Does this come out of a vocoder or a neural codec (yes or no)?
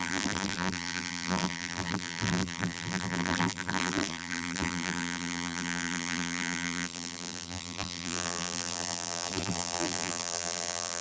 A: yes